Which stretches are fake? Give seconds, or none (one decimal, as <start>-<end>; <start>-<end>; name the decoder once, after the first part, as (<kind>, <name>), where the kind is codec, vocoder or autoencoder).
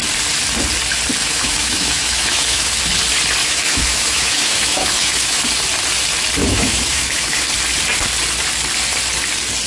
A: 1.2-2.8 (autoencoder, DAC-VAE); 3.4-5.4; 6.4-7.5